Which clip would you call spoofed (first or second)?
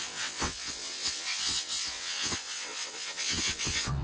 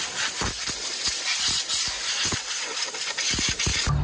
first